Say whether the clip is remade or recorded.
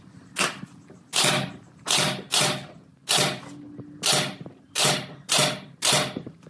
recorded